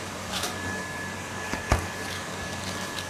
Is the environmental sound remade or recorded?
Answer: remade